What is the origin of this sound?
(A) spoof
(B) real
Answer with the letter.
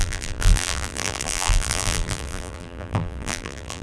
A